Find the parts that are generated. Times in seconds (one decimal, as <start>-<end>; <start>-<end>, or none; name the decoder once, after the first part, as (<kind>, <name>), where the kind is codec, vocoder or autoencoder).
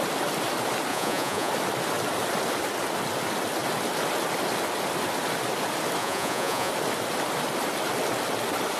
0.9-1.5 (vocoder, Vocos); 6.0-6.7